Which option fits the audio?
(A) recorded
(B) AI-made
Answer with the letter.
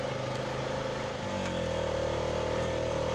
A